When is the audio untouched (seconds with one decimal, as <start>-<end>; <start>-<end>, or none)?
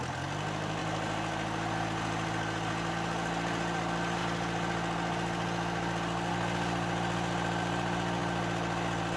0.0-9.2